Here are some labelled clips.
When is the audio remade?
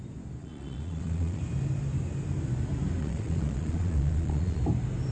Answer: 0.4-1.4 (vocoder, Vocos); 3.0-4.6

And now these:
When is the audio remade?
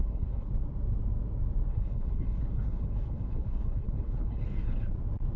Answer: 0.0-0.5 (codec, HILCodec); 1.7-4.9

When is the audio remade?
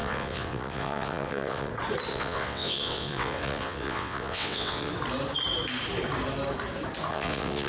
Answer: 0.0-1.7 (vocoder, WaveNeXt); 2.1-4.9; 7.1-7.7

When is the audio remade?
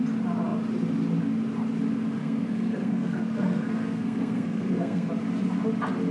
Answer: 2.2-5.1 (codec, SNAC)